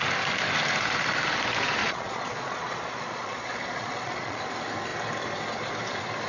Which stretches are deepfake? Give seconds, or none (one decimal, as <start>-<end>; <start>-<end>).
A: 1.8-4.4